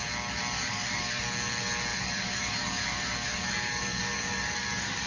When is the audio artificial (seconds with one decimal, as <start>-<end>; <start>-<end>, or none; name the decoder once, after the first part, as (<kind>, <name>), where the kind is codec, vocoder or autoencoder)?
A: 0.6-1.2 (codec, DAC); 1.9-5.1